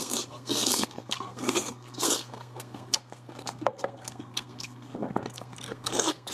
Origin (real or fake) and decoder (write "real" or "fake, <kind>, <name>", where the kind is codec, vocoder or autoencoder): fake, codec, SNAC